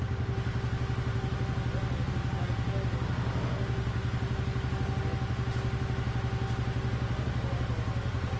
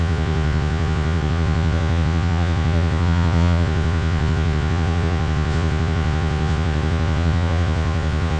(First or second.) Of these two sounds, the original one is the first